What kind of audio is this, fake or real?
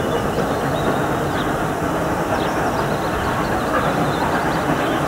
real